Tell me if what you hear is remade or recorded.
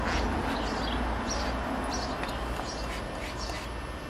recorded